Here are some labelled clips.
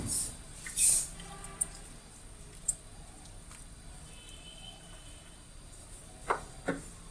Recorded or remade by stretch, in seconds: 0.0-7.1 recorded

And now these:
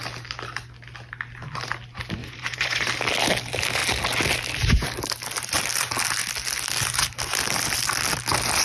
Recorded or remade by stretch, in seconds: 0.0-2.2 recorded; 2.2-2.9 remade; 2.9-8.6 recorded

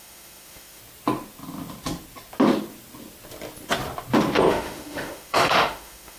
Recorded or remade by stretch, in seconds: 0.0-0.8 remade; 0.8-4.5 recorded; 4.5-6.2 remade

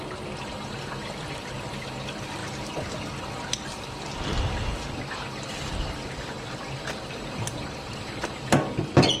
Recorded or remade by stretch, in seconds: 0.0-9.2 recorded

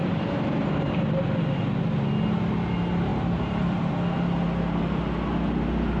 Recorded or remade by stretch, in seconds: 0.0-1.0 remade; 1.0-3.1 recorded; 3.1-3.9 remade; 3.9-6.0 recorded